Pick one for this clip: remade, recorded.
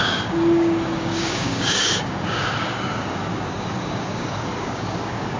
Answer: remade